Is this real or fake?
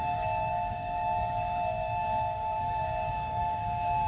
fake